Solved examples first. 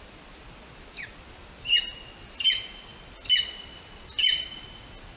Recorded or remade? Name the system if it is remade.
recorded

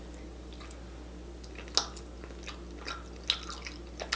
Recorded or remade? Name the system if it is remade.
recorded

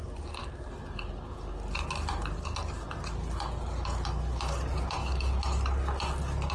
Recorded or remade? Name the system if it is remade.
recorded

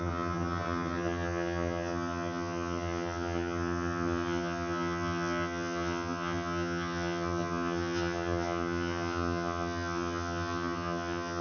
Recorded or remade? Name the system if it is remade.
remade, vocoder, HiFi-GAN